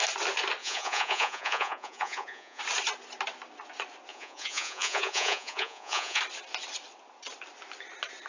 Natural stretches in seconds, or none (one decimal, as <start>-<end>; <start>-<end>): 0.0-0.6; 2.6-4.1; 6.2-8.3